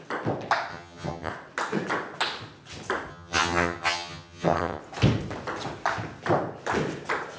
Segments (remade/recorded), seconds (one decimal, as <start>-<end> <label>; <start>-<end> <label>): 0.0-0.7 recorded; 0.7-1.3 remade; 1.3-3.1 recorded; 3.1-4.8 remade; 4.8-7.4 recorded